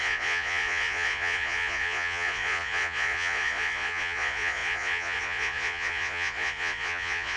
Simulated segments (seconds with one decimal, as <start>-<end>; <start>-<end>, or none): 0.0-7.4